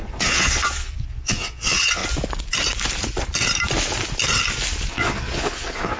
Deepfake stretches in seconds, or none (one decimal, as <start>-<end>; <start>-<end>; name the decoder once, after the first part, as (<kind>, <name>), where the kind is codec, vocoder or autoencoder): 0.0-2.0 (vocoder, Vocos); 4.9-6.0